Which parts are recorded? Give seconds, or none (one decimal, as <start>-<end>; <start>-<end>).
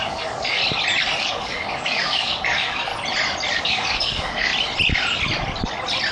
0.6-1.2; 2.9-3.6; 4.5-6.1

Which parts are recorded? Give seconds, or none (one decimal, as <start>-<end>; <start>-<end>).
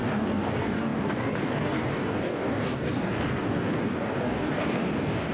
none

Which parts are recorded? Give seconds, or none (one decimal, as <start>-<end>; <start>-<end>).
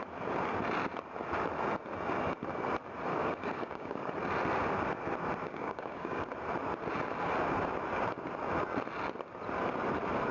0.0-3.1; 4.1-5.4; 6.3-10.3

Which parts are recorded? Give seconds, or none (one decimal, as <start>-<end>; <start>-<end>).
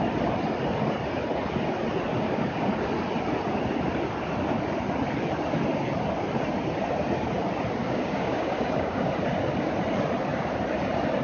0.0-2.1; 2.7-7.8; 9.0-11.2